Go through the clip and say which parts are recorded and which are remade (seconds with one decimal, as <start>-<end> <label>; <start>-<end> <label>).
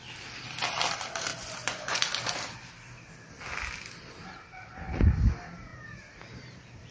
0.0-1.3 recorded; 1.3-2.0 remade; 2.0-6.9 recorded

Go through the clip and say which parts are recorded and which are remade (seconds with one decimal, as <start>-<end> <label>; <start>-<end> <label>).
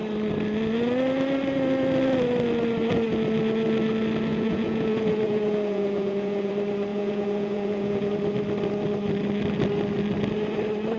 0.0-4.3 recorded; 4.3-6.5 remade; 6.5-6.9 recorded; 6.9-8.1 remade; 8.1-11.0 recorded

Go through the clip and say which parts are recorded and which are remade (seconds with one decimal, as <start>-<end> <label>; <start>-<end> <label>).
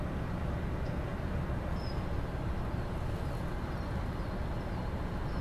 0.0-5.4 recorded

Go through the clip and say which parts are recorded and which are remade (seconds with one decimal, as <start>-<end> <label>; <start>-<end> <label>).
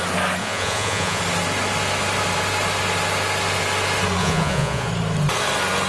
0.0-0.4 recorded; 0.4-1.2 remade; 1.2-4.2 recorded; 4.2-4.9 remade; 4.9-5.9 recorded